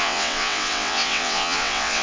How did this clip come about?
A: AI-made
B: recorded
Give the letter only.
A